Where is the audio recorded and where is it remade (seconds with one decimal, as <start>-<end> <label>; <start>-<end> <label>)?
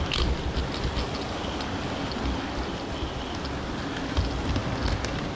0.0-5.3 recorded